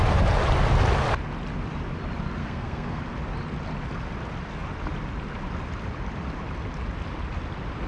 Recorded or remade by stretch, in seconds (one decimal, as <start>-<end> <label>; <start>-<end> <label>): 0.0-2.4 recorded; 2.4-3.0 remade; 3.0-7.9 recorded